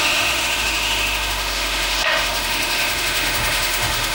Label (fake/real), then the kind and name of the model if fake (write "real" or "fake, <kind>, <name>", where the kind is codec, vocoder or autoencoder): fake, autoencoder, DAC-VAE